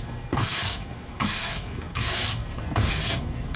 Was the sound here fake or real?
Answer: fake